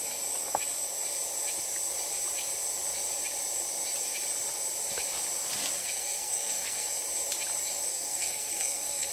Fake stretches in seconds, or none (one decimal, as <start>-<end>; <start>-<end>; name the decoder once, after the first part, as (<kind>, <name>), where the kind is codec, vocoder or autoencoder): 5.8-7.0 (codec, SNAC); 7.9-9.1